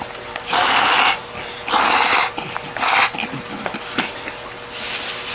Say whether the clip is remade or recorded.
recorded